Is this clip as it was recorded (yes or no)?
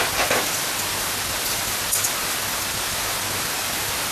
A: yes